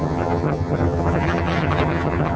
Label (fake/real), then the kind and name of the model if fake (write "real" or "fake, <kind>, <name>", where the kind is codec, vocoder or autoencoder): fake, vocoder, HiFi-GAN